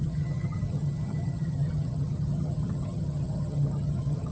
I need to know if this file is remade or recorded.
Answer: remade